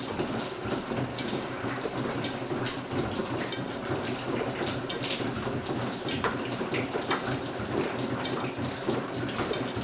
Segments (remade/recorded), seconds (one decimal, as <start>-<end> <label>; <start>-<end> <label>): 0.0-1.1 recorded; 1.1-1.7 remade; 1.7-9.8 recorded

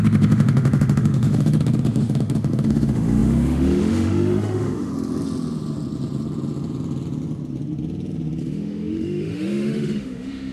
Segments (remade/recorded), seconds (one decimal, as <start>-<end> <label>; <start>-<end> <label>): 0.0-4.9 remade; 4.9-8.4 recorded; 8.4-10.5 remade